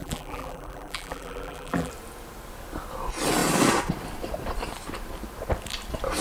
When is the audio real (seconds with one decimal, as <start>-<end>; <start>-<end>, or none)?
1.9-6.2